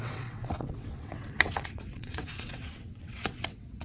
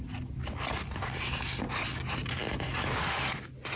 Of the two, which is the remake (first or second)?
first